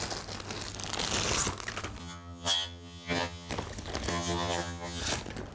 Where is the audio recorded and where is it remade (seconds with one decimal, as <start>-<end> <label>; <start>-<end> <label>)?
0.0-2.0 recorded; 2.0-3.5 remade; 3.5-4.1 recorded; 4.1-5.0 remade; 5.0-5.5 recorded